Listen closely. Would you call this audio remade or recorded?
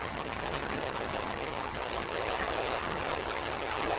remade